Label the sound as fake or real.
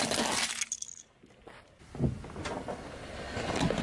real